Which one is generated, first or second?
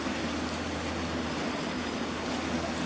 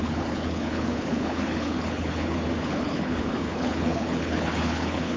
second